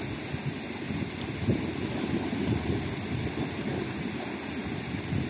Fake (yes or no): no